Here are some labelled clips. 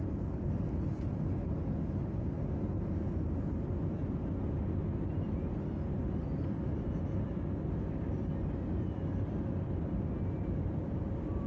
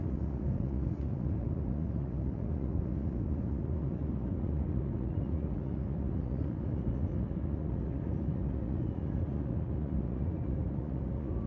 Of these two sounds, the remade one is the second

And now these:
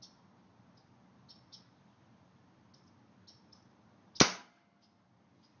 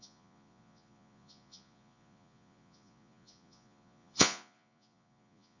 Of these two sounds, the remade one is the second